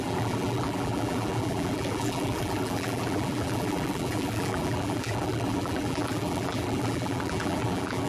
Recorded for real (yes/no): no